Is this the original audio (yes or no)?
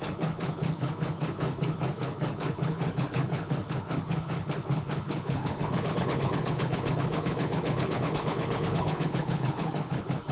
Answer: no